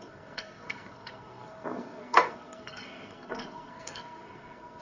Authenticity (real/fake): fake